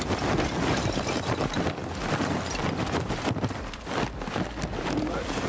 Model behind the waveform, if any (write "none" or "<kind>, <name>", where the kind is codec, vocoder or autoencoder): none